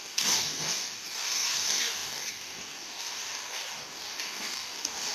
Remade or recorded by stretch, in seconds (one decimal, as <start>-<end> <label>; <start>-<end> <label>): 0.0-5.1 remade